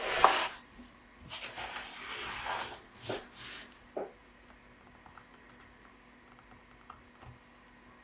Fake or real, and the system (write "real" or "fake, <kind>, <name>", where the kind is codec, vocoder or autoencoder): real